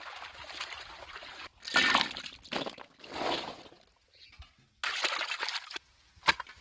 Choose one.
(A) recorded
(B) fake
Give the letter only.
A